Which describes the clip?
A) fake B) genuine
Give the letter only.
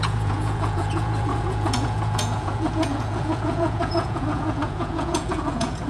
A